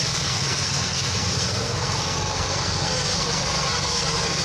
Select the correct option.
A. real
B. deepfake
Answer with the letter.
B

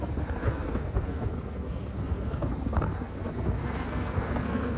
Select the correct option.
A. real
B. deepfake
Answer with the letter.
B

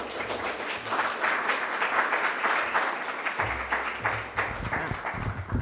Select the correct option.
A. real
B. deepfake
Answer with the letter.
A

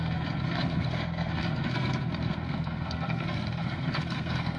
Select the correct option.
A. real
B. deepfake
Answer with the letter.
B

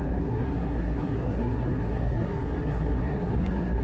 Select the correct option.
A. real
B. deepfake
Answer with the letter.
B